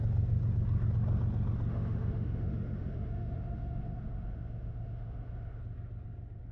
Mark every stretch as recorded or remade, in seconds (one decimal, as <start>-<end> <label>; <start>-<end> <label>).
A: 0.0-1.7 recorded; 1.7-5.6 remade; 5.6-6.5 recorded